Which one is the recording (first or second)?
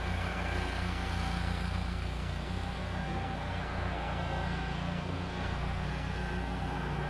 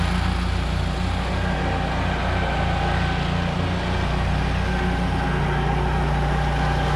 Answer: second